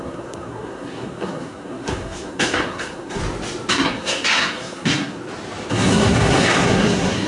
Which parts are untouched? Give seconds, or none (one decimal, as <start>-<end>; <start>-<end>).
3.2-3.7; 5.2-5.7